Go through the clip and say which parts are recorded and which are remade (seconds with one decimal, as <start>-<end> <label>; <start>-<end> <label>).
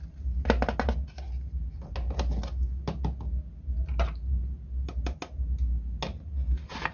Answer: 0.0-6.9 recorded